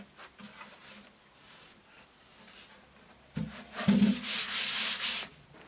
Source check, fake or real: real